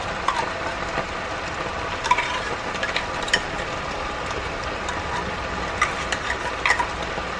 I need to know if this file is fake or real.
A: real